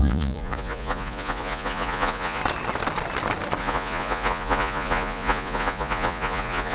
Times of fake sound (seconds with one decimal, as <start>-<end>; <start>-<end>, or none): 0.0-2.4; 3.6-6.7